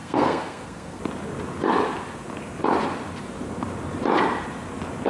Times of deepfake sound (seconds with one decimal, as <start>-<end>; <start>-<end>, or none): 0.0-1.0